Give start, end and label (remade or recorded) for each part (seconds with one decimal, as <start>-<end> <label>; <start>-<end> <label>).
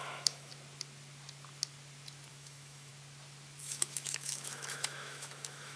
0.0-0.5 remade; 0.5-2.3 recorded; 2.3-2.9 remade; 2.9-3.6 recorded; 3.6-5.8 remade